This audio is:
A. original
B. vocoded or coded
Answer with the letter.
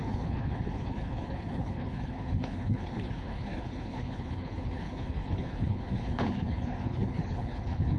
B